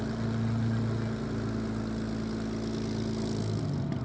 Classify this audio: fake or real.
real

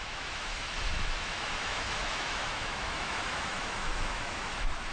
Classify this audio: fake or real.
fake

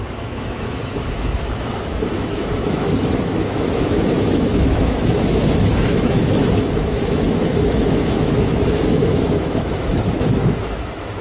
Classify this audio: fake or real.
fake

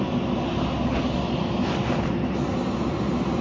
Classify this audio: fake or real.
real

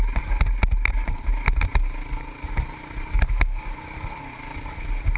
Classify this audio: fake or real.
real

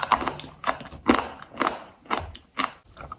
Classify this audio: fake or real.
real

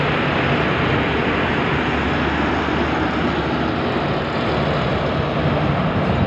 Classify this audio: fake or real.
real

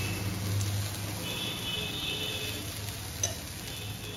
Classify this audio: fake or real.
real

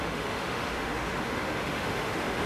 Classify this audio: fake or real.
fake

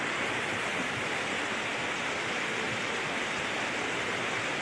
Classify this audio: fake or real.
real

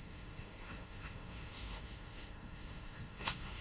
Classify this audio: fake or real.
fake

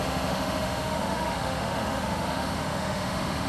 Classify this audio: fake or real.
fake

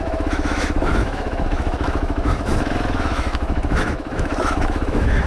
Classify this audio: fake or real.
fake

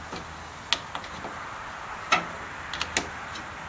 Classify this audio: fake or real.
real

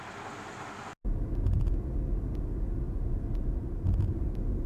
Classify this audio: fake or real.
real